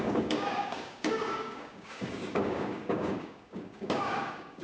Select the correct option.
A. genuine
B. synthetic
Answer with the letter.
B